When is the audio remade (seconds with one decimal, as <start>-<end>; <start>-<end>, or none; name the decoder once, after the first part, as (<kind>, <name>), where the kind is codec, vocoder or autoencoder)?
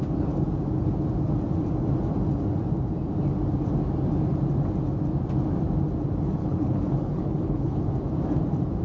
6.4-7.8 (codec, HILCodec)